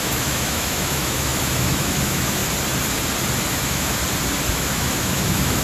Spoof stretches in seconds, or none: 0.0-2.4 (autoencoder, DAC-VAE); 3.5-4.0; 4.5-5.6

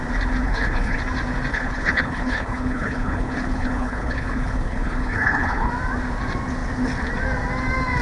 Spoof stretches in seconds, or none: 0.4-1.0 (codec, HILCodec); 1.5-5.7